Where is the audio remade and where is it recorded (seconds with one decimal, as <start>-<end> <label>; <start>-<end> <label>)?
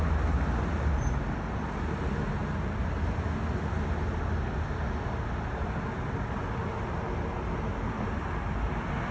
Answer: 0.0-9.1 recorded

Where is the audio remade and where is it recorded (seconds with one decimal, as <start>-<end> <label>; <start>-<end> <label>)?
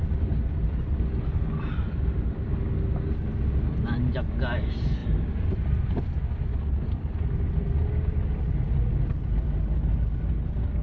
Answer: 0.0-10.8 recorded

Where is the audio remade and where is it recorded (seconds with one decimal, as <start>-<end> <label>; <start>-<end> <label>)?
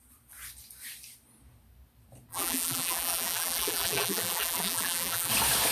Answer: 0.0-2.3 recorded; 2.3-5.3 remade; 5.3-5.7 recorded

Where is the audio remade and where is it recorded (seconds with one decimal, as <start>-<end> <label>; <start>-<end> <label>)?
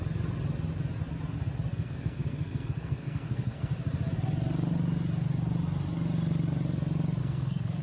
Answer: 0.0-1.7 recorded; 1.7-3.7 remade; 3.7-7.2 recorded; 7.2-7.8 remade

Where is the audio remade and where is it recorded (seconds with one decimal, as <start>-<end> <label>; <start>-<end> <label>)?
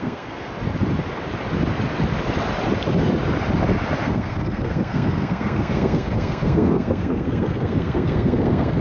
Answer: 0.0-0.5 remade; 0.5-4.0 recorded; 4.0-8.8 remade